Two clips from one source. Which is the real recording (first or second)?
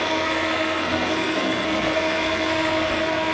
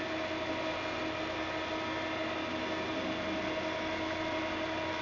second